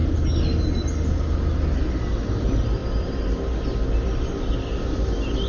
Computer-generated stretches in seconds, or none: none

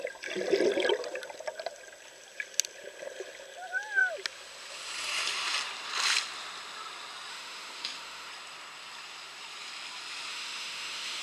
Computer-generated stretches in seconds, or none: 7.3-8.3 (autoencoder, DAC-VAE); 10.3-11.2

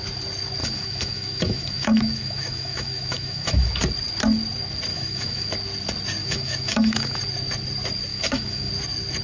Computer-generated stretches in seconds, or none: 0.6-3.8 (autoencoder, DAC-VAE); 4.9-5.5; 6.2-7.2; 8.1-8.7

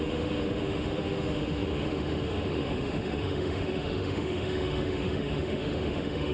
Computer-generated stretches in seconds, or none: 0.0-6.3 (autoencoder, DAC-VAE)

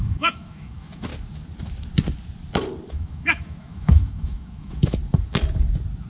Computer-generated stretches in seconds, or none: 0.0-1.1 (autoencoder, DAC-VAE); 2.9-5.0